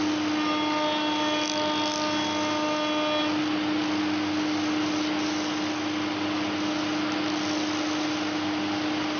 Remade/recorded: recorded